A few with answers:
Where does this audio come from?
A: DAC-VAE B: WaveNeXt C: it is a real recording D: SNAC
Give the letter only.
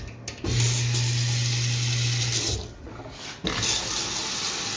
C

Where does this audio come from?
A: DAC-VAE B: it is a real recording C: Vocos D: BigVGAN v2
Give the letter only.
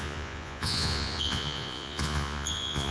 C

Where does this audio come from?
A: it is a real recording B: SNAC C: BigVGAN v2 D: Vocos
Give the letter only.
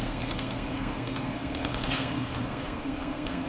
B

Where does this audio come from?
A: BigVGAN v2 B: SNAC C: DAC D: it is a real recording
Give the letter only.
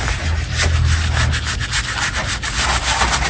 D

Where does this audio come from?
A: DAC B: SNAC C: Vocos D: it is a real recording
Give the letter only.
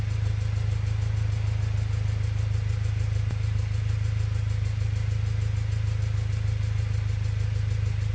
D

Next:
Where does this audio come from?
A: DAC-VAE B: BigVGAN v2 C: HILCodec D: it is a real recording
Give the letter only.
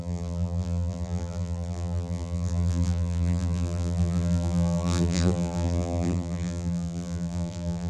B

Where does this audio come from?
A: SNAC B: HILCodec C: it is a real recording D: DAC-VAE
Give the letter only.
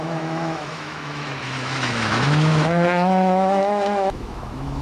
D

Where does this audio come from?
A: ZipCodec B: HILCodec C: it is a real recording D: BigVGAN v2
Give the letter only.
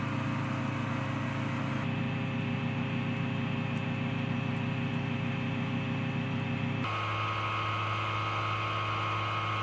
C